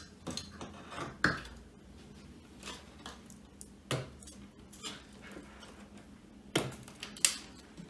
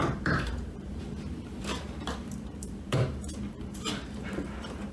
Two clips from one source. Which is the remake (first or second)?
second